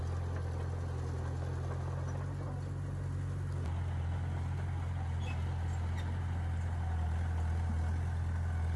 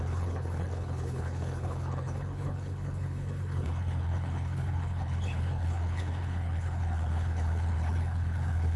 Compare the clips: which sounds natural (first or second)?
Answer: first